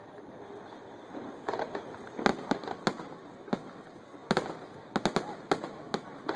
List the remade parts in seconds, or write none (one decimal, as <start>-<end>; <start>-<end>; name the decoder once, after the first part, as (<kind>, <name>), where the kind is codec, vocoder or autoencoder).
none